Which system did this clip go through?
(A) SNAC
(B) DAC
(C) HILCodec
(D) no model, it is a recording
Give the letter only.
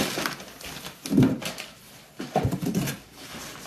D